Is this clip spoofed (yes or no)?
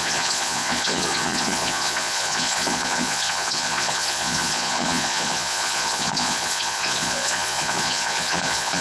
yes